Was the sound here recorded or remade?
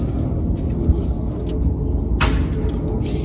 recorded